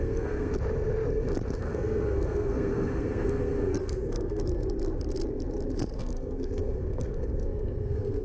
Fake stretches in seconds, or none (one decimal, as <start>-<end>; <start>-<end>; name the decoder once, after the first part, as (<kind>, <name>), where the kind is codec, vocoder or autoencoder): 0.0-0.5 (codec, SNAC); 1.6-4.6; 6.0-8.2